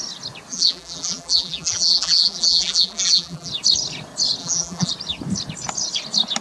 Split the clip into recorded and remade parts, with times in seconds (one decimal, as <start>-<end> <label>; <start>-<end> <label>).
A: 0.0-0.5 recorded; 0.5-3.5 remade; 3.5-4.4 recorded; 4.4-4.9 remade; 4.9-6.4 recorded

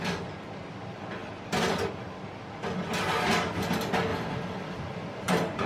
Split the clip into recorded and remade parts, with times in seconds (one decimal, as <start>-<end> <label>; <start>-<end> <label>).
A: 0.0-1.2 recorded; 1.2-2.4 remade; 2.4-5.7 recorded